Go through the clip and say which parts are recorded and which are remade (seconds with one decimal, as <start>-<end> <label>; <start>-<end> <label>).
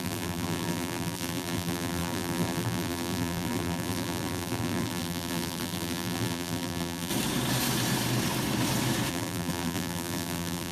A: 0.0-7.1 remade; 7.1-9.1 recorded; 9.1-10.7 remade